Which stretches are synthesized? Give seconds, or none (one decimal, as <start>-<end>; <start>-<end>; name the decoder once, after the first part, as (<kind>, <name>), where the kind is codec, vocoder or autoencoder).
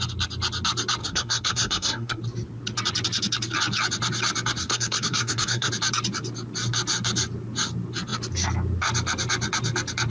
1.0-2.2 (codec, SNAC); 4.6-5.7